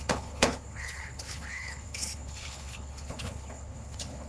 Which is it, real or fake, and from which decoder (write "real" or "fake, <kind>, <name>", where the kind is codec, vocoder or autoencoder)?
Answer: fake, codec, HILCodec